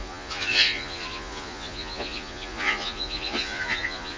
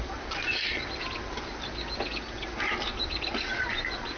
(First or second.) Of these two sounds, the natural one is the second